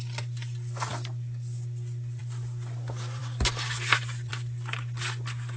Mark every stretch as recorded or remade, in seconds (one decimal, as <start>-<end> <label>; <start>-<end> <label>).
0.0-5.6 recorded